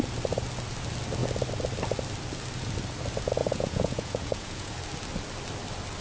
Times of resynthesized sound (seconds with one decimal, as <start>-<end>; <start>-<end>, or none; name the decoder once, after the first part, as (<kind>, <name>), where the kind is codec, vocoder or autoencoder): 3.4-4.7 (vocoder, Vocos)